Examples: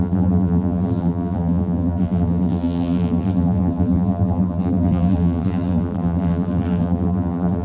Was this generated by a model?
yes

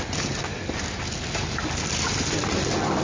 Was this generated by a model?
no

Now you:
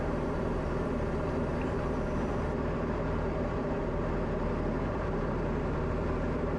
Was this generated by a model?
yes